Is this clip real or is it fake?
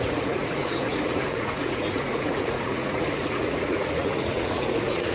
fake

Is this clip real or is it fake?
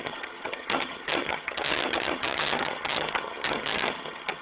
fake